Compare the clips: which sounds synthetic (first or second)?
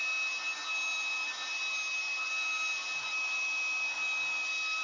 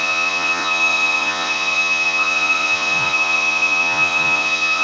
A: second